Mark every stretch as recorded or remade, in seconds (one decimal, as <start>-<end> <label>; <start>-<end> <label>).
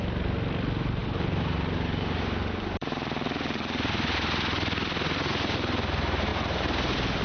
0.0-1.0 recorded; 1.0-5.3 remade; 5.3-6.3 recorded; 6.3-7.2 remade